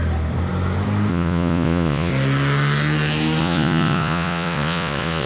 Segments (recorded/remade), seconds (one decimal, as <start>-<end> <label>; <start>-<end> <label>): 0.0-1.1 recorded; 1.1-2.1 remade; 2.1-3.4 recorded; 3.4-5.3 remade

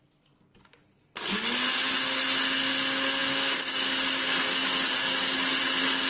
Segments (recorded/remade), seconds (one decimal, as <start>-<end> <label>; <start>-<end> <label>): 0.0-6.1 recorded

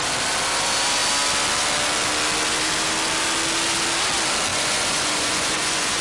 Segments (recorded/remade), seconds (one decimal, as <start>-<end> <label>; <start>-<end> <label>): 0.0-4.5 recorded; 4.5-6.0 remade

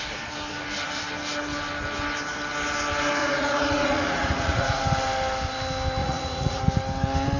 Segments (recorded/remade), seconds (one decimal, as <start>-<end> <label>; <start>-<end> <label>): 0.0-3.2 recorded; 3.2-4.8 remade; 4.8-6.0 recorded; 6.0-6.6 remade; 6.6-7.4 recorded